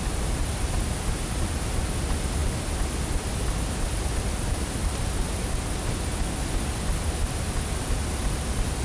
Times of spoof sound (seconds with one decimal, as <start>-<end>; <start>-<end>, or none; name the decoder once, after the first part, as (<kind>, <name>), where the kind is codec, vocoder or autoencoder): none